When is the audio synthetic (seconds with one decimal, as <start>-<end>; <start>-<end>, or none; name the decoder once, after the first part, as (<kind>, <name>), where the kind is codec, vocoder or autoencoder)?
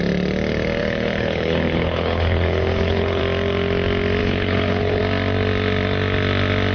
0.8-3.2 (codec, HILCodec); 4.2-5.0